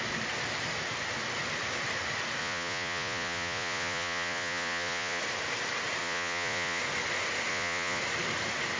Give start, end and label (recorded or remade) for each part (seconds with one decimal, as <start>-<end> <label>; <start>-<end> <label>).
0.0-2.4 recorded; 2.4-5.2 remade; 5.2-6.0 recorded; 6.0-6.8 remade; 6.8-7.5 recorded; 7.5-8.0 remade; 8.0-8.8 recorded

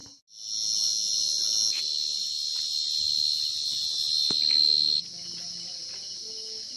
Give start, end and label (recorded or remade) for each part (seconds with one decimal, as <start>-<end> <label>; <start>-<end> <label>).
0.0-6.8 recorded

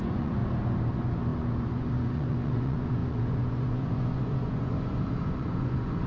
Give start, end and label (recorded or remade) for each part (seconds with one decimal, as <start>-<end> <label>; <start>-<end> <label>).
0.0-0.4 remade; 0.4-0.9 recorded; 0.9-6.1 remade

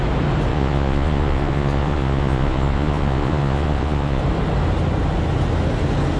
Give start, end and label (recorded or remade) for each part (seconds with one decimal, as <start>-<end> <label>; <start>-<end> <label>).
0.0-0.5 recorded; 0.5-4.2 remade; 4.2-6.2 recorded